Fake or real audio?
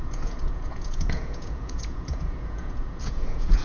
fake